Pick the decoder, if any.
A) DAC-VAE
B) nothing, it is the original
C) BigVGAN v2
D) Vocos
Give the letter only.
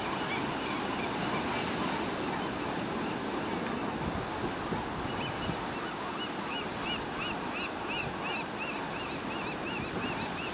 B